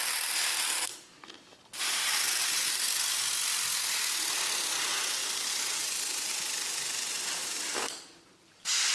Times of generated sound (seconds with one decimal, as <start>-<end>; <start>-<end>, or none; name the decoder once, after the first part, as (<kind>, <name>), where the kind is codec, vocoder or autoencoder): none